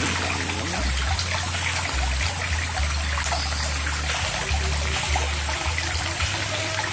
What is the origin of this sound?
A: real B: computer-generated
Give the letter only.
A